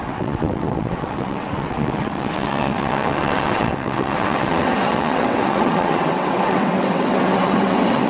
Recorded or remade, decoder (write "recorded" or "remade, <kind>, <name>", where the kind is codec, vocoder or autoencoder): remade, vocoder, WaveNeXt